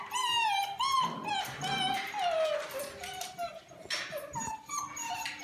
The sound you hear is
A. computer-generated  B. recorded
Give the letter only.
B